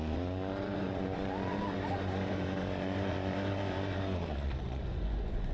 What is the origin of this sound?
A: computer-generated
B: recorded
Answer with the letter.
A